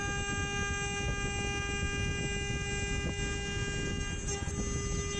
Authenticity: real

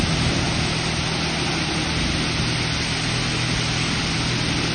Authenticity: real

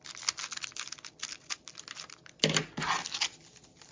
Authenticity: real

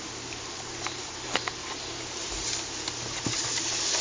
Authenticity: fake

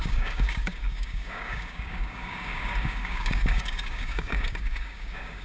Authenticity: fake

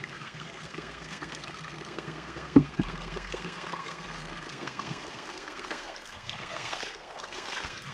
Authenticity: fake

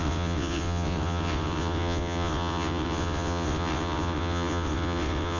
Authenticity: fake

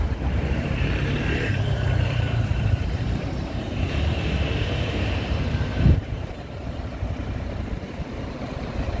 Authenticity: fake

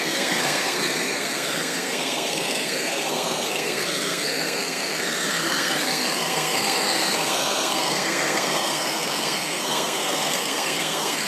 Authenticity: fake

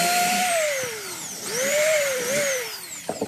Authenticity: fake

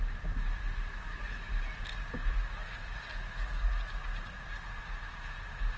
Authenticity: real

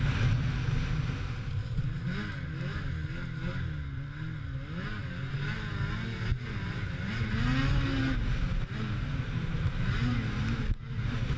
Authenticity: real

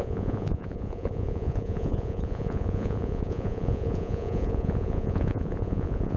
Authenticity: fake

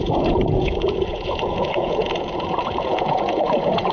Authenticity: fake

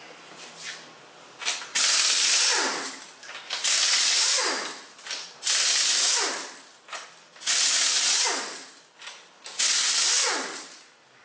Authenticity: real